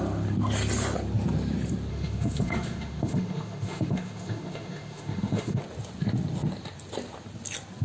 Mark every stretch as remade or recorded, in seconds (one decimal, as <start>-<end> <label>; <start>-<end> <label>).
0.0-1.9 recorded; 1.9-5.6 remade; 5.6-7.8 recorded